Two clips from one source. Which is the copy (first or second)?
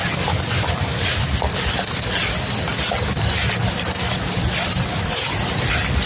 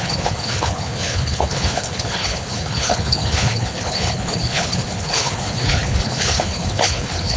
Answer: second